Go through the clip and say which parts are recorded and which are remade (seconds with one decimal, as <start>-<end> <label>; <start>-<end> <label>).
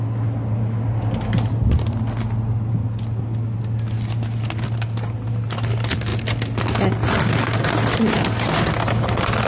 0.0-9.5 recorded